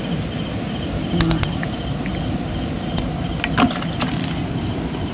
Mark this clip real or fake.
real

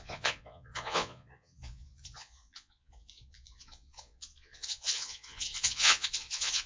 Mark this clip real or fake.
fake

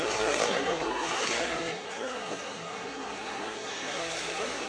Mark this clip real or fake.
fake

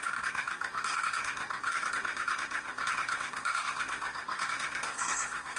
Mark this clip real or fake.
fake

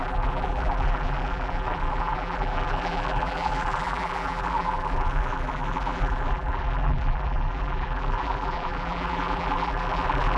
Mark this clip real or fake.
fake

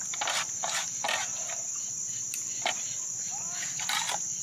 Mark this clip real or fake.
real